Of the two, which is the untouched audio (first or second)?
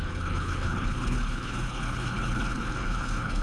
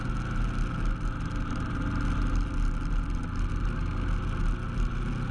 second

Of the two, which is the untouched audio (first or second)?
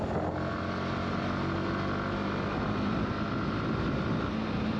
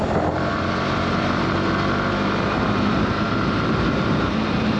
first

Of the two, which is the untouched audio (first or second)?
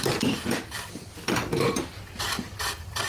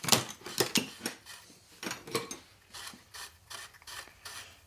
second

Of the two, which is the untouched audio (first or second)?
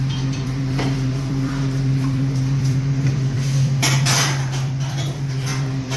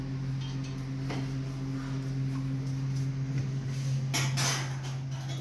second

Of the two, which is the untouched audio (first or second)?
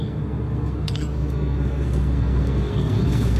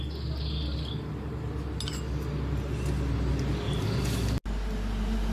second